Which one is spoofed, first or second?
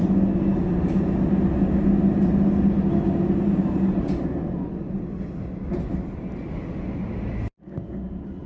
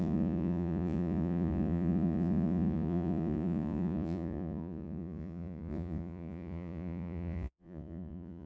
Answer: second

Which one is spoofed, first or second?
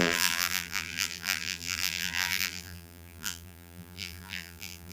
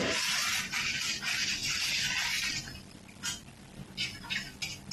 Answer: first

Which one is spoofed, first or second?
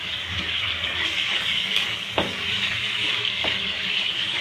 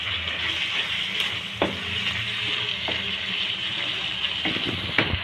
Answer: first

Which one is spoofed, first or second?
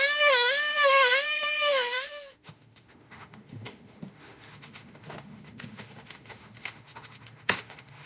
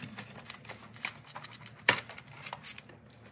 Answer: first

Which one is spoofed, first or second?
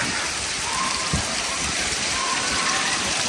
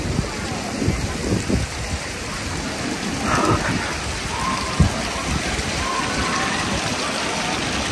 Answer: first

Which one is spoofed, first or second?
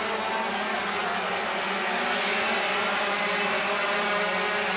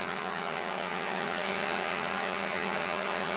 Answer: second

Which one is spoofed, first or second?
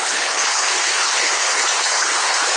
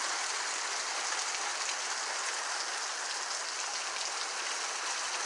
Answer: first